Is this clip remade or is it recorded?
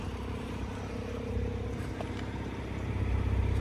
recorded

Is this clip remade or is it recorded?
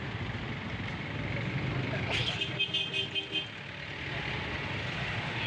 recorded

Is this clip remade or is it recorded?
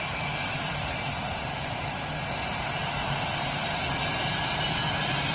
recorded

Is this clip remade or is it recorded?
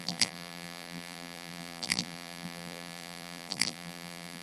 remade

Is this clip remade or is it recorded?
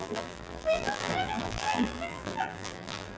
remade